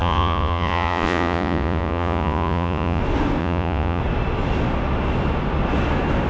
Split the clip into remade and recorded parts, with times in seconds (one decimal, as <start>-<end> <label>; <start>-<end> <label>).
0.0-3.0 remade; 3.0-3.4 recorded; 3.4-4.0 remade; 4.0-6.3 recorded